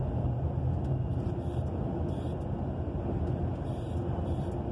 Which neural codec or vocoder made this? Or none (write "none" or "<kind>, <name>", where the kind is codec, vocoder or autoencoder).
none